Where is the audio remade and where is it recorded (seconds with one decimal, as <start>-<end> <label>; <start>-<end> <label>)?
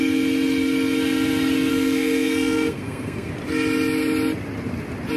0.0-1.7 recorded; 1.7-3.3 remade; 3.3-5.2 recorded